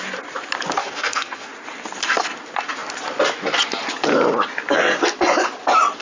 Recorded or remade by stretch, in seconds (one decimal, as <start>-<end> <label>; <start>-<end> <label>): 0.0-0.8 recorded; 0.8-1.5 remade; 1.5-6.0 recorded